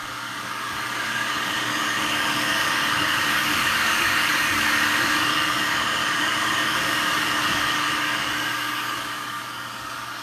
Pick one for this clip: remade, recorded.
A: remade